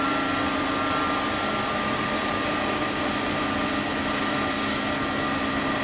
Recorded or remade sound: recorded